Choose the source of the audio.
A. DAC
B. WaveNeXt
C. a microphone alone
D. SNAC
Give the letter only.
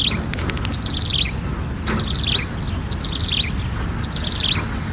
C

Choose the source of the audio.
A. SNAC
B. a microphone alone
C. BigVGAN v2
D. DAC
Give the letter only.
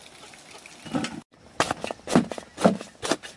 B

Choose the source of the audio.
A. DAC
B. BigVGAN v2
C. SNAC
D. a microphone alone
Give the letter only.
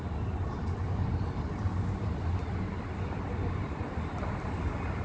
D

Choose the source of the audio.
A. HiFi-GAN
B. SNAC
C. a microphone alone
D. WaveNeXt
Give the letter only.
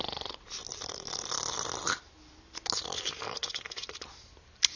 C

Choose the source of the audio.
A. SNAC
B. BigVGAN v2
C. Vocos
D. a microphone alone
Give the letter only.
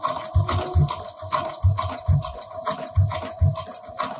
D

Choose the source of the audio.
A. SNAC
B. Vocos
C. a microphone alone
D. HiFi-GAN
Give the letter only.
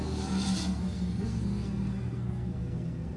A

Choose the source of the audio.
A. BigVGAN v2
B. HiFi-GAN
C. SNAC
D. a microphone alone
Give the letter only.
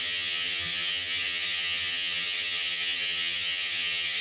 B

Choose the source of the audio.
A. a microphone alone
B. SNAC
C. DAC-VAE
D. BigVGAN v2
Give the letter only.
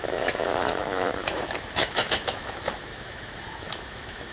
C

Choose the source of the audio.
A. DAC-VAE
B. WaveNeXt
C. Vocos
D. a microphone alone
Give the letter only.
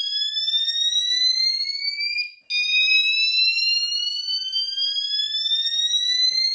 D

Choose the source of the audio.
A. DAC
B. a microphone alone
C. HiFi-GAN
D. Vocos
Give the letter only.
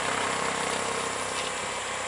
B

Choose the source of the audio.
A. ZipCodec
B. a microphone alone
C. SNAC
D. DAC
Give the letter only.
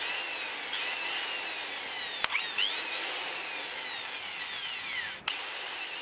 B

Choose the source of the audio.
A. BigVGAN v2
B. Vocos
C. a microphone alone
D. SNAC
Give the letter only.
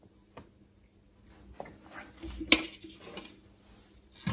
C